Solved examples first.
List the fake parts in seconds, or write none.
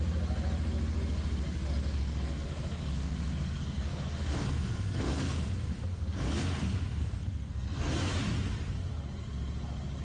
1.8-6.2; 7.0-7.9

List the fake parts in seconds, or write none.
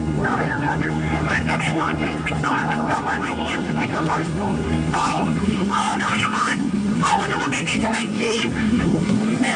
0.0-9.6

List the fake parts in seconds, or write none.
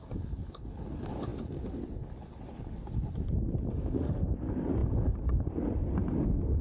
3.7-4.3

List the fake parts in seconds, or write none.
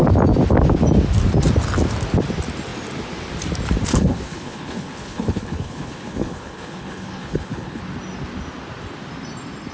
3.9-7.8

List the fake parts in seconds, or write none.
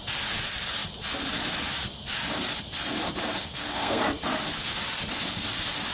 3.4-4.0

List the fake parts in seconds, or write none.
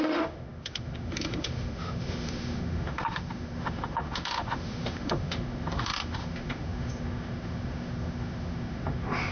0.0-9.3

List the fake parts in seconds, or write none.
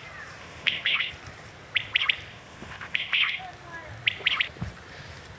0.4-1.1; 2.3-3.4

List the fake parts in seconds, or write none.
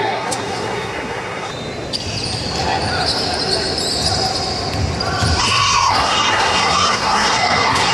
0.0-1.5; 5.4-7.9